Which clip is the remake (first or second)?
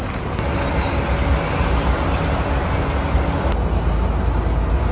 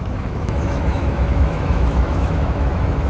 second